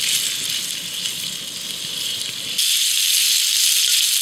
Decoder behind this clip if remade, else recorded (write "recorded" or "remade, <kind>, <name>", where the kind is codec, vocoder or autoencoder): recorded